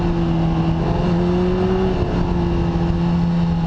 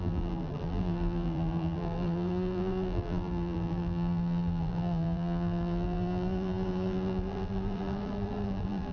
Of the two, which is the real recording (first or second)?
first